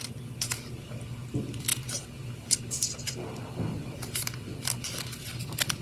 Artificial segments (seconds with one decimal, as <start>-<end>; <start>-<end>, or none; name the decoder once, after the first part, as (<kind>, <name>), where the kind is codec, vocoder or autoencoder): none